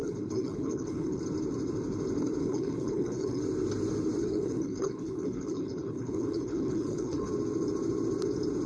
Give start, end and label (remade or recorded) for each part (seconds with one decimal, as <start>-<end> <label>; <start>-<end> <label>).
0.0-1.2 remade; 1.2-2.4 recorded; 2.4-3.4 remade; 3.4-4.2 recorded; 4.2-7.3 remade; 7.3-8.7 recorded